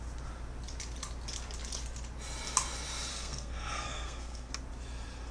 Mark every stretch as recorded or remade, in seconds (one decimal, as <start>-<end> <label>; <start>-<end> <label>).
0.0-3.1 recorded; 3.1-4.5 remade; 4.5-5.3 recorded